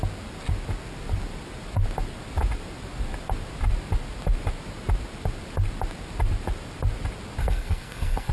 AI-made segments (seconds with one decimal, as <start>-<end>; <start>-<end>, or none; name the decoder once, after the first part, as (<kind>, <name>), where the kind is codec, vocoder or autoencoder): 7.4-8.3 (codec, SNAC)